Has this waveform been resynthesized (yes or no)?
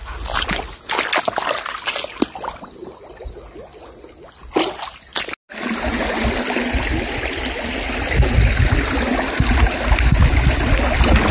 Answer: no